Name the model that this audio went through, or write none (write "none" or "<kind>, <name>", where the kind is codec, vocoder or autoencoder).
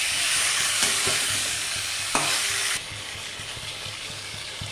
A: codec, DAC